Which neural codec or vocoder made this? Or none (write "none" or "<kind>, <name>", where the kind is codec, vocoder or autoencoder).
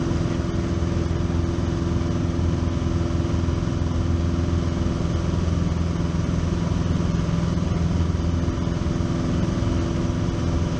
none